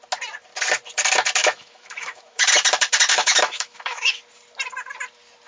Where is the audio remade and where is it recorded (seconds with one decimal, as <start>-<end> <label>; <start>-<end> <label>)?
0.0-1.4 recorded; 1.4-2.5 remade; 2.5-3.1 recorded; 3.1-4.2 remade; 4.2-5.5 recorded